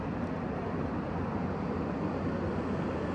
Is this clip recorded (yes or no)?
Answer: yes